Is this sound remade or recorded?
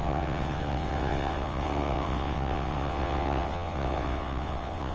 remade